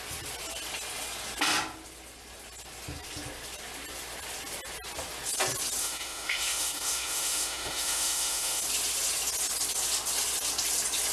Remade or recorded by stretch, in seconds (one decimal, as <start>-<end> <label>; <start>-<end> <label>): 0.0-5.8 recorded; 5.8-8.6 remade; 8.6-11.1 recorded